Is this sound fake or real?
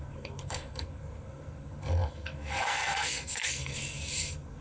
fake